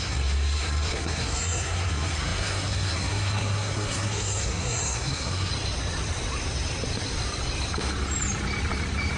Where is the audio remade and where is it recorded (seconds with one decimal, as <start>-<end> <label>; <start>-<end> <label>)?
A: 0.0-5.5 remade; 5.5-9.2 recorded